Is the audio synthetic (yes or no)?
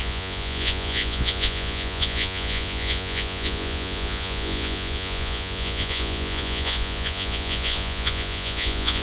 yes